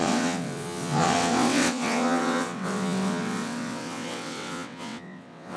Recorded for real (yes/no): no